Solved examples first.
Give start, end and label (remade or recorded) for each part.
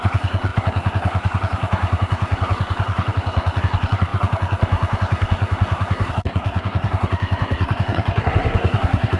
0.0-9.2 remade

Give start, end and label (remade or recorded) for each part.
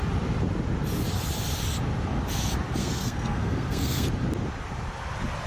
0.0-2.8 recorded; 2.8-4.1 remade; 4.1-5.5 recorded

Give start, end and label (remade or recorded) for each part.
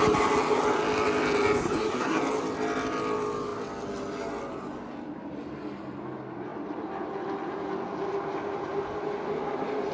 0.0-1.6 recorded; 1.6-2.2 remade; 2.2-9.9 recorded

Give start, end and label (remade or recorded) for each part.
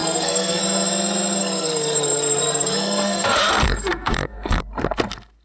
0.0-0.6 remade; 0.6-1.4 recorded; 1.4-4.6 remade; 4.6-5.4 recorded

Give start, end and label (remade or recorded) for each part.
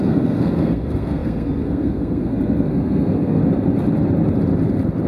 0.0-3.4 remade; 3.4-5.1 recorded